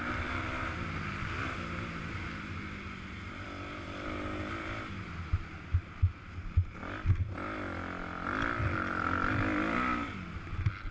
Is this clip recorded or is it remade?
recorded